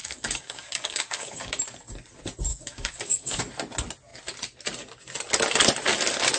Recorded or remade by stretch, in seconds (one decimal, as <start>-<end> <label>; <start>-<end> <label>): 0.0-1.6 remade; 1.6-2.5 recorded; 2.5-3.4 remade; 3.4-6.4 recorded

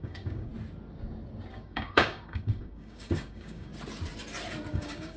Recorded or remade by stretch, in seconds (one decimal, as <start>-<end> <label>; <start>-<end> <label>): 0.0-0.5 remade; 0.5-1.5 recorded; 1.5-3.7 remade; 3.7-4.7 recorded; 4.7-5.2 remade

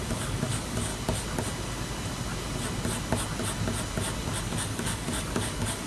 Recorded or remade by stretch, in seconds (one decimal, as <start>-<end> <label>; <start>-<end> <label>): 0.0-0.9 remade; 0.9-4.4 recorded; 4.4-5.9 remade

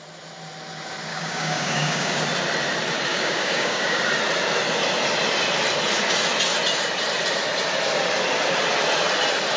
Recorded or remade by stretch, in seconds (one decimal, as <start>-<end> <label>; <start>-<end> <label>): 0.0-1.1 recorded; 1.1-2.2 remade; 2.2-3.1 recorded; 3.1-4.0 remade; 4.0-9.6 recorded